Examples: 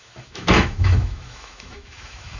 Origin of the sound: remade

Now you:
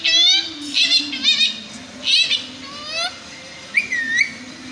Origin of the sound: recorded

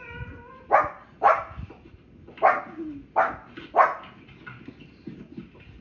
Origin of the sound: recorded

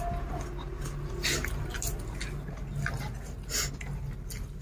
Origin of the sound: recorded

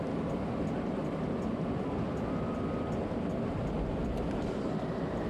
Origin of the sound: recorded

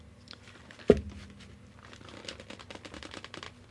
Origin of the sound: recorded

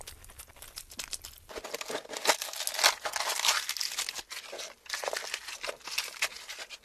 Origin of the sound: recorded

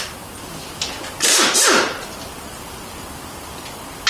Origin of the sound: recorded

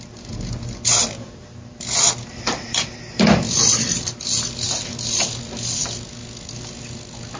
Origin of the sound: recorded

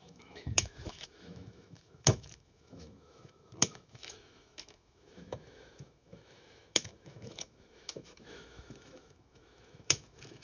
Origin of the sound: remade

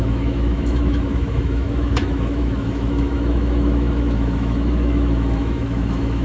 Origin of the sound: remade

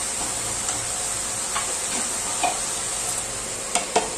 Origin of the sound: recorded